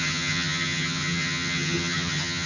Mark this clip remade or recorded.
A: remade